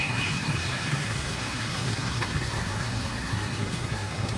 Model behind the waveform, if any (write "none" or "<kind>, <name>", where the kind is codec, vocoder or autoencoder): codec, SNAC